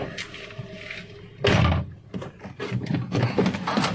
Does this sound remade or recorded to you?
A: recorded